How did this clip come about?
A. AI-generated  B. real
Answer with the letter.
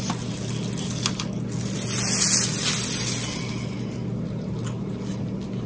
B